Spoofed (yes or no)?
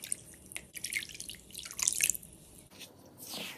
no